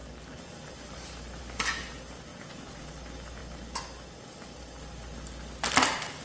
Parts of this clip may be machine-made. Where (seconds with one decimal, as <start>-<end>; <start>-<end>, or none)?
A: 2.3-2.9